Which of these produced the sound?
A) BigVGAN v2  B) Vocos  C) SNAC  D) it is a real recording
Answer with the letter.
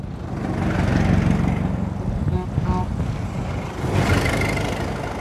D